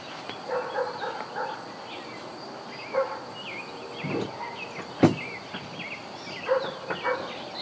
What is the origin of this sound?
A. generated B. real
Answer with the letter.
B